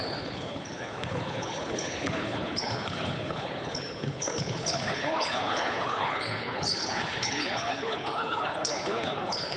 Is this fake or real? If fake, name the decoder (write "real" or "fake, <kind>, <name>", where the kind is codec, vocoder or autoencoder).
fake, codec, HILCodec